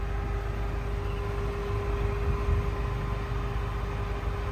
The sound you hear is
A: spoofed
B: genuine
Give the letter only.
B